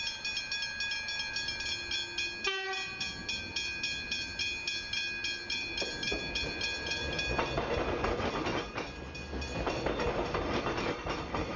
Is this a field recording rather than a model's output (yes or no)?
yes